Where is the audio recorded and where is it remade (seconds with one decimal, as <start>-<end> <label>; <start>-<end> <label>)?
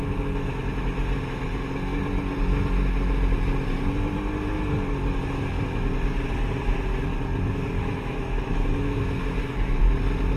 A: 0.0-7.8 recorded; 7.8-9.8 remade; 9.8-10.4 recorded